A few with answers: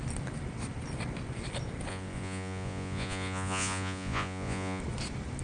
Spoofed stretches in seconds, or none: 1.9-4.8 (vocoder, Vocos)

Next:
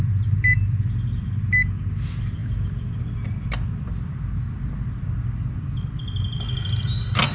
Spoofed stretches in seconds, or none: none

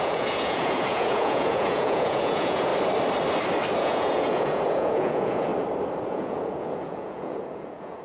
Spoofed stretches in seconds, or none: 0.0-2.7 (vocoder, Vocos); 3.8-5.5; 6.1-8.0

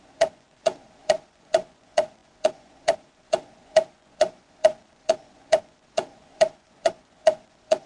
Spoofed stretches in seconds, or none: 0.0-7.9 (vocoder, Vocos)